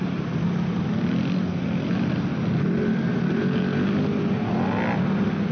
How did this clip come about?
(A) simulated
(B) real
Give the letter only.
B